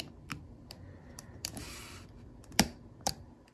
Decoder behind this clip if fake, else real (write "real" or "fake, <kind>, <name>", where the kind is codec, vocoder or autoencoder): fake, vocoder, BigVGAN v2